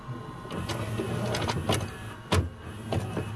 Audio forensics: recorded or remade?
recorded